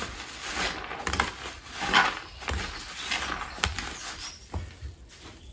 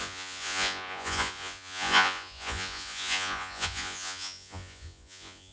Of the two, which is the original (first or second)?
first